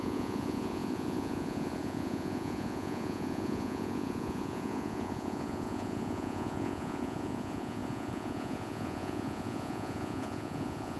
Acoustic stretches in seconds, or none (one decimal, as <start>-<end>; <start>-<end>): none